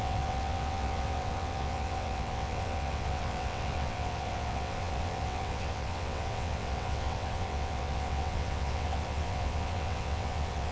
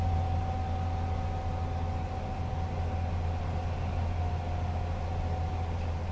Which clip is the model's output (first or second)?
first